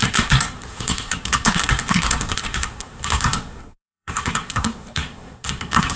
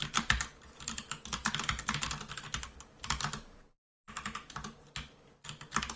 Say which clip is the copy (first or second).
first